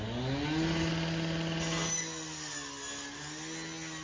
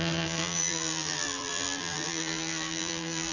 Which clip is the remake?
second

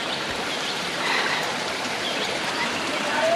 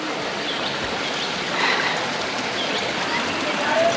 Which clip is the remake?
first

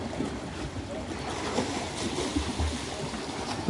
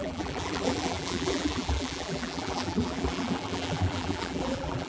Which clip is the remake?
second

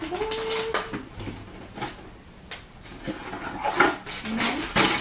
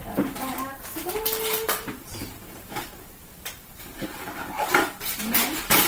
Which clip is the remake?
second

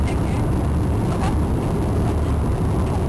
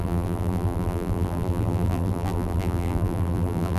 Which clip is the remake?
second